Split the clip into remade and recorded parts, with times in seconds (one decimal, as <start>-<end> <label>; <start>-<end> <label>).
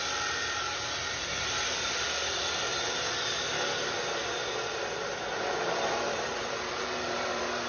0.0-2.7 remade; 2.7-5.7 recorded; 5.7-7.7 remade